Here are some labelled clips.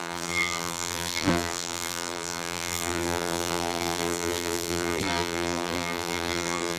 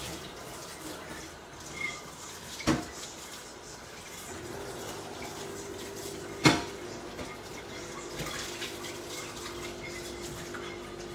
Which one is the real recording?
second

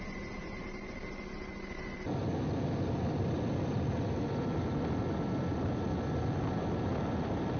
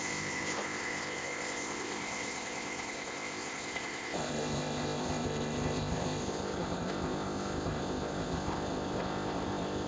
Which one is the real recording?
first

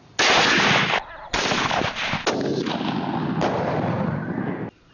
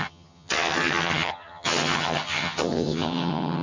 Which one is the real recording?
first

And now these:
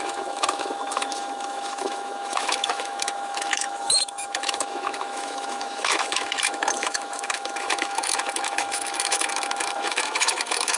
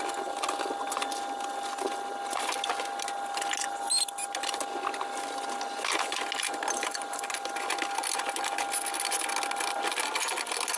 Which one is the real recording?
second